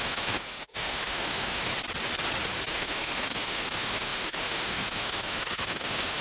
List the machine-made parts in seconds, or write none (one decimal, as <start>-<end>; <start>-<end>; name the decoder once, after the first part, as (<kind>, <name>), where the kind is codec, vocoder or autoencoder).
0.0-1.7 (autoencoder, DAC-VAE); 2.7-6.2